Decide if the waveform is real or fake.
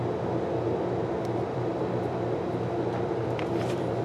real